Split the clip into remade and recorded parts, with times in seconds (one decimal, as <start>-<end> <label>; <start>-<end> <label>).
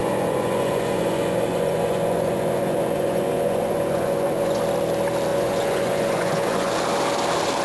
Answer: 0.0-4.6 remade; 4.6-5.3 recorded; 5.3-6.7 remade; 6.7-7.6 recorded